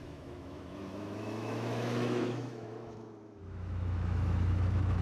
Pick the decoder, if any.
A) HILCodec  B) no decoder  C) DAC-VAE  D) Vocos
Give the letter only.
C